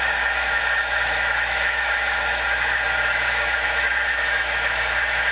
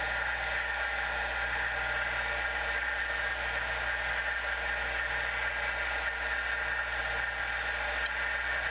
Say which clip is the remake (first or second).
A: first